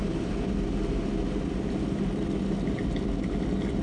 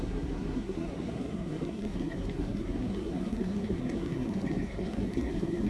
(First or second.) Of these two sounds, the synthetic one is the second